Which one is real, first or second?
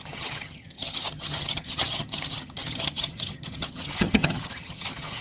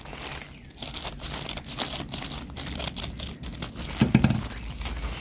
second